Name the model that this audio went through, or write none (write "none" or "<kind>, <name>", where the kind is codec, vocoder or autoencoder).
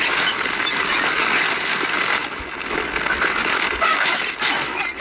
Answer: none